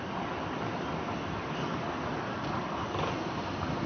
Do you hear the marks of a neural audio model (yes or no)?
no